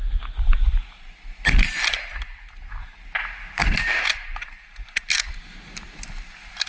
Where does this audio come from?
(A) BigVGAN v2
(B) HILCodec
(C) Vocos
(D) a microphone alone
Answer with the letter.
D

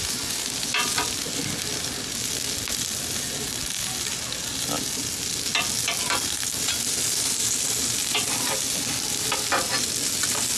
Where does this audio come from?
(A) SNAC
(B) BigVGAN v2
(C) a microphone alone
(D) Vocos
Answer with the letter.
C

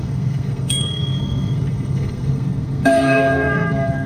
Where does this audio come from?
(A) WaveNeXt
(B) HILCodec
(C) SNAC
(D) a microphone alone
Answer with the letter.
C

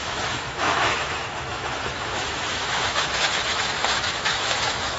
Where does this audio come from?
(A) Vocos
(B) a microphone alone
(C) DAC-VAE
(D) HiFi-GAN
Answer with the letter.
C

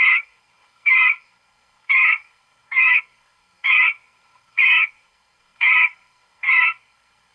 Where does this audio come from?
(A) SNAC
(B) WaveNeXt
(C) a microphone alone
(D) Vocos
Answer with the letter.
A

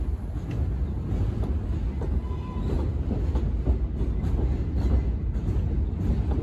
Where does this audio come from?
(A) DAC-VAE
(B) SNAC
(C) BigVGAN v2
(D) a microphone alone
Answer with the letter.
D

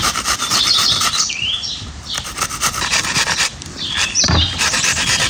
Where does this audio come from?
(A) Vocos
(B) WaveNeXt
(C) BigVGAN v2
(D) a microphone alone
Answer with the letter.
C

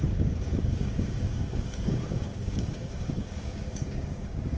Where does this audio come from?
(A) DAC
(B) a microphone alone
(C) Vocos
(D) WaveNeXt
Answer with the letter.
A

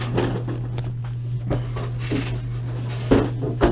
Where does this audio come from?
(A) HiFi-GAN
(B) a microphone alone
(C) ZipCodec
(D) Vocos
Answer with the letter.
B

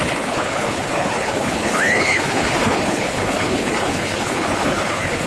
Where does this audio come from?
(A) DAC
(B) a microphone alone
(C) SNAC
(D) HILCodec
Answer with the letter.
D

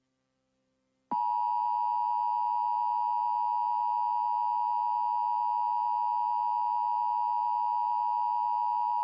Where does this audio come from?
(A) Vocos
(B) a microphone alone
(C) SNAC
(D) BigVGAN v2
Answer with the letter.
B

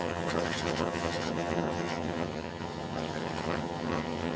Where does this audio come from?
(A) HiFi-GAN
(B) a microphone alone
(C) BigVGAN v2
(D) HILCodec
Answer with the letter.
A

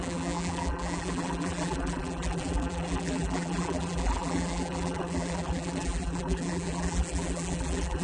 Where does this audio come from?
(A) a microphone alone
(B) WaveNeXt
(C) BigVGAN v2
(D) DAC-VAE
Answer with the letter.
C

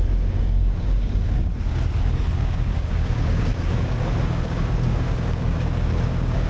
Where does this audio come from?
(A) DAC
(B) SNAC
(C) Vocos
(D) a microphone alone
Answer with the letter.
A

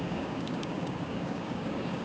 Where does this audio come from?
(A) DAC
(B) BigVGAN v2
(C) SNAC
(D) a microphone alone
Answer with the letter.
A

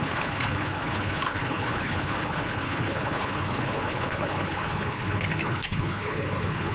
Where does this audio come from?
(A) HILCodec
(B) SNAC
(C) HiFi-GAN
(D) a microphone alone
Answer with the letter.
A